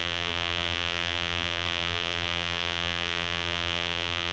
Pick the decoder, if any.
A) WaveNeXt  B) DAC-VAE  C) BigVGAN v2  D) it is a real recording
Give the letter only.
C